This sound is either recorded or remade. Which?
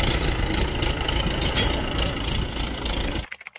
recorded